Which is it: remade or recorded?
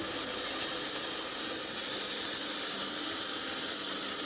recorded